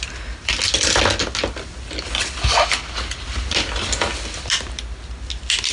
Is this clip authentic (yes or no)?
yes